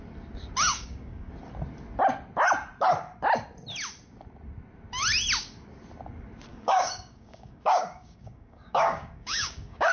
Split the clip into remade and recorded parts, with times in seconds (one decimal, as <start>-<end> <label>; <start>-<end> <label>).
0.0-0.7 recorded; 0.7-1.3 remade; 1.3-6.5 recorded; 6.5-9.9 remade